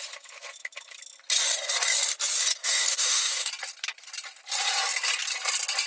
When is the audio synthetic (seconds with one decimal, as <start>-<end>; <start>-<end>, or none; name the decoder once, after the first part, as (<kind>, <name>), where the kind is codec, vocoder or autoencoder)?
2.6-3.5 (autoencoder, DAC-VAE)